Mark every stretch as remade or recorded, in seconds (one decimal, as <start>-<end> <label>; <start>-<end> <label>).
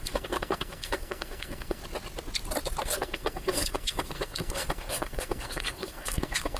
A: 0.0-1.8 remade; 1.8-2.8 recorded; 2.8-6.6 remade